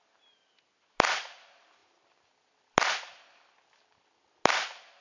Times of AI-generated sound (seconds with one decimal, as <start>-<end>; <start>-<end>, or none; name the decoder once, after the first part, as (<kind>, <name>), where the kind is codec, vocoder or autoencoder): none